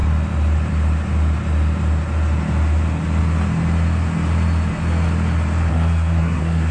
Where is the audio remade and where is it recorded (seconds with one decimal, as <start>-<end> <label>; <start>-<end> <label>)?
0.0-5.7 recorded; 5.7-6.7 remade